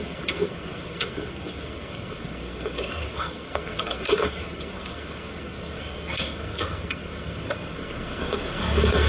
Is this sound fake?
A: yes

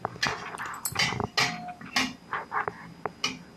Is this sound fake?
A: no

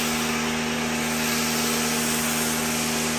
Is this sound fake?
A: no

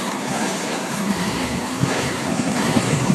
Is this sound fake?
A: yes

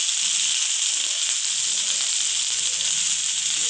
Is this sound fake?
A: no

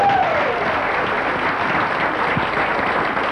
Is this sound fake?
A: no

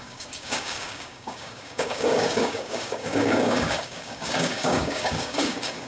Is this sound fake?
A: yes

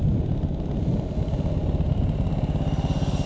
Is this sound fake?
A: no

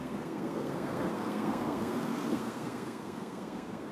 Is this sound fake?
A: yes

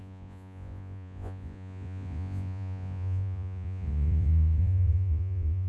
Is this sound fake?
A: yes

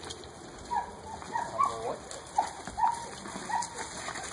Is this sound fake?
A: no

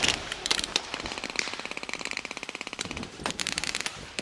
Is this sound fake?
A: yes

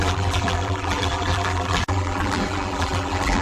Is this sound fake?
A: yes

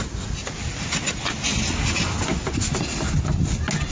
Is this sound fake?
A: no